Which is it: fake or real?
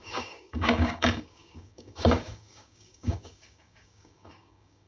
fake